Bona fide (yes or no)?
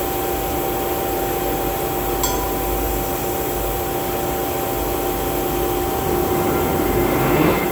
yes